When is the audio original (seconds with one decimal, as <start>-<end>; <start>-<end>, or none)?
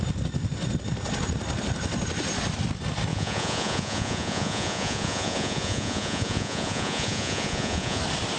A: 0.0-3.1; 8.0-8.4